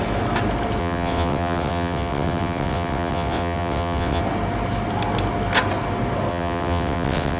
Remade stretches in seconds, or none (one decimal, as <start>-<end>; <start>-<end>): 0.8-4.2; 6.3-7.4